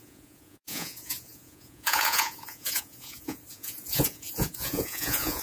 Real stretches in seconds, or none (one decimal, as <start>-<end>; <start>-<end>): none